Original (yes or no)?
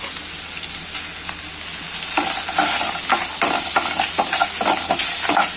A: yes